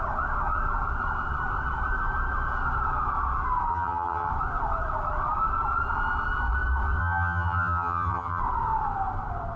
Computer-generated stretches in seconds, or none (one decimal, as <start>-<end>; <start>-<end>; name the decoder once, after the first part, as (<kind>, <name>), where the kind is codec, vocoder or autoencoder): 3.7-4.3 (vocoder, HiFi-GAN); 7.0-8.4